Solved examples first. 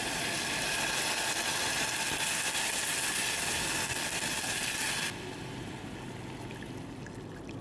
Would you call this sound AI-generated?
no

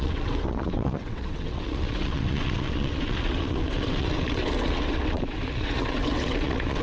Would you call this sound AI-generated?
yes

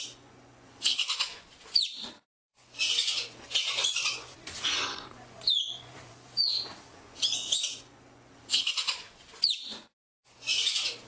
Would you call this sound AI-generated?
yes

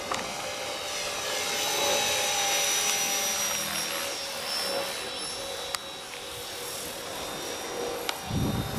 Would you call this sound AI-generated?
no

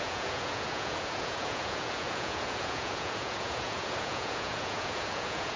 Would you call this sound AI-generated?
yes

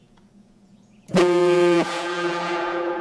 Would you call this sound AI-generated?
yes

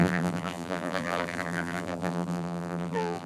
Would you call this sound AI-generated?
yes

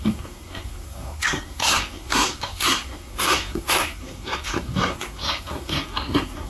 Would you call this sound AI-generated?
yes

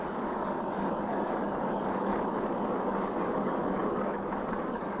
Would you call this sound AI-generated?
yes